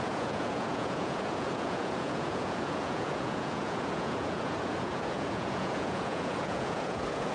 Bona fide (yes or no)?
no